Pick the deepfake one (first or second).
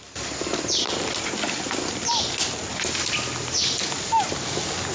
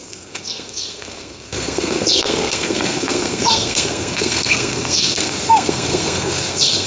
second